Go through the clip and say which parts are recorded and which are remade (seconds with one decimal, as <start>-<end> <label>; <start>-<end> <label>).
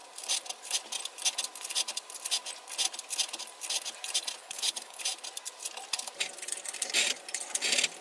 0.0-4.4 recorded; 4.4-5.0 remade; 5.0-8.0 recorded